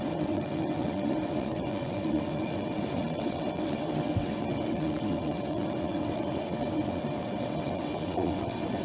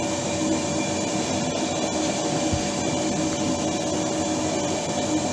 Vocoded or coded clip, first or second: first